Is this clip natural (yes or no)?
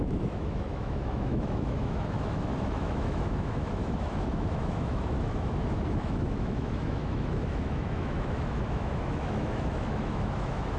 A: no